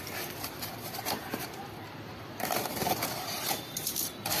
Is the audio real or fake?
fake